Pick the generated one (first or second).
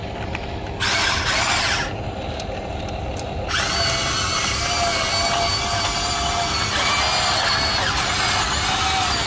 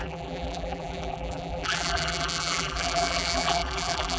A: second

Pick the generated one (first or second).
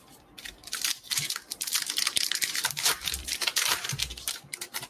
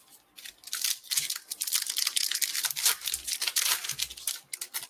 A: first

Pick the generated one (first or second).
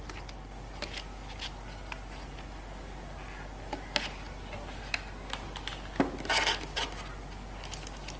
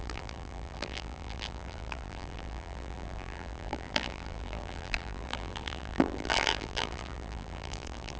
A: second